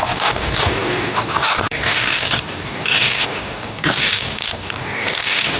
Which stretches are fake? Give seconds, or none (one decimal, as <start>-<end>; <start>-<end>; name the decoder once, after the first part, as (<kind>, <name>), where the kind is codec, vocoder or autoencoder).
0.0-5.6 (codec, DAC)